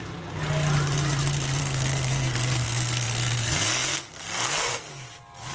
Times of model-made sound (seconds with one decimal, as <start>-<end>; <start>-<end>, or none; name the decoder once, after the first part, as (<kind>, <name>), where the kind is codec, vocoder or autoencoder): 1.6-4.9 (codec, SNAC)